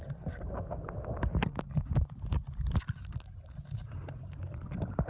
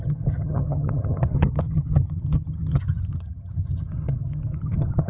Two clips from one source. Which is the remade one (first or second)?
second